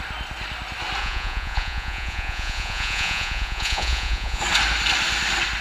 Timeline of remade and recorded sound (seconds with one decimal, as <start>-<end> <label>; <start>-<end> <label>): 0.0-1.0 recorded; 1.0-4.4 remade; 4.4-5.6 recorded